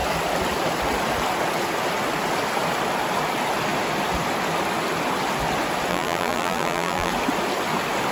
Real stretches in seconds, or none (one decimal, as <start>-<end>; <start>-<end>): 0.0-5.9; 7.1-8.1